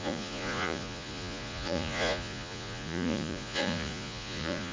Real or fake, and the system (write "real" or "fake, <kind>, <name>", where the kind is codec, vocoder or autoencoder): fake, vocoder, Vocos